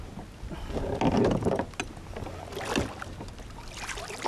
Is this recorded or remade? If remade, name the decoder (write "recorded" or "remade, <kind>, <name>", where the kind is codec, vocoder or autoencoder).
recorded